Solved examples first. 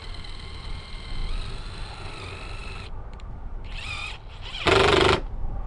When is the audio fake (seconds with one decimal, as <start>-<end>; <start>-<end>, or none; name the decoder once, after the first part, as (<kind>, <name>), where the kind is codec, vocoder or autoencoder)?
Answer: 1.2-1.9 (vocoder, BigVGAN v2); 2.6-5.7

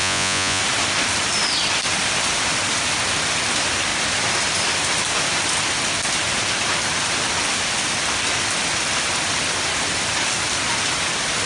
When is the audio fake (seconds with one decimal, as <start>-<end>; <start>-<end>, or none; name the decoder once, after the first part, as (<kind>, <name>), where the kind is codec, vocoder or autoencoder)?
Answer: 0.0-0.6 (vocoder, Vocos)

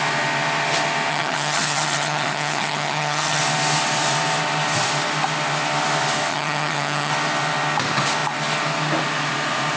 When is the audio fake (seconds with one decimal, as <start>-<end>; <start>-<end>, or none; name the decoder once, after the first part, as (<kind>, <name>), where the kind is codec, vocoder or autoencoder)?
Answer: 1.1-3.4 (vocoder, HiFi-GAN); 6.3-7.1

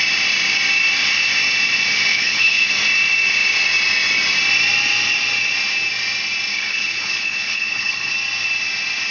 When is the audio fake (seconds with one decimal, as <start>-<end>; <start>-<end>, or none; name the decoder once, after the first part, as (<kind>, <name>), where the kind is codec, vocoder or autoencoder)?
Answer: 2.1-2.7 (codec, HILCodec); 6.5-8.1

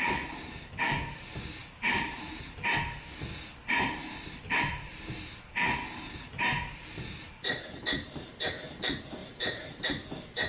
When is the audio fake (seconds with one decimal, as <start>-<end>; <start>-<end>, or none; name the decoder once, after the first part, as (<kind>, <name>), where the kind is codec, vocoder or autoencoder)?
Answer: 1.6-2.2 (vocoder, BigVGAN v2); 9.2-10.1